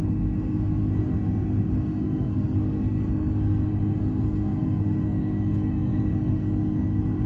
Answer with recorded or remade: remade